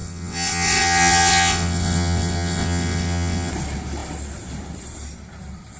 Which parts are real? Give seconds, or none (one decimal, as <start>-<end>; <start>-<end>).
3.5-5.8